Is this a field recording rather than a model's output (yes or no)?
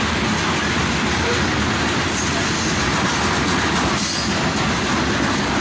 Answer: yes